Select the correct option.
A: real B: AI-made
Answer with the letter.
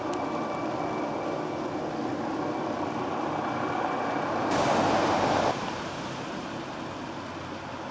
A